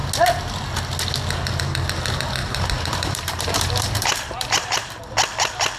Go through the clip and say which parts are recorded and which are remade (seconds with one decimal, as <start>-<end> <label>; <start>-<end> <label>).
0.0-2.4 recorded; 2.4-5.0 remade; 5.0-5.8 recorded